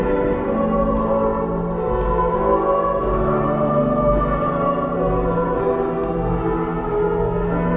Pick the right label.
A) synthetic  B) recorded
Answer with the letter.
B